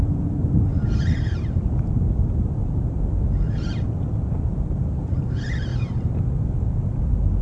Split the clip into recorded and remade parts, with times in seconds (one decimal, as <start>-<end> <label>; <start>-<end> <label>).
0.0-2.6 remade; 2.6-4.5 recorded; 4.5-5.7 remade; 5.7-6.9 recorded; 6.9-7.4 remade